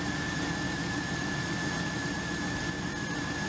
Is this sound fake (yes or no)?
no